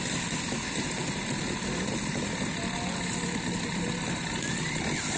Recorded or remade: recorded